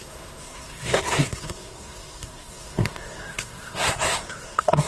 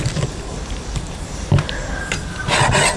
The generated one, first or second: first